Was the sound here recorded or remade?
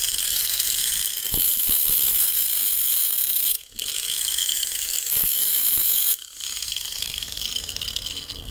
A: remade